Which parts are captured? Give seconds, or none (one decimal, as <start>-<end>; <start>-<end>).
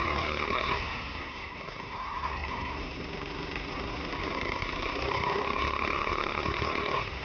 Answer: none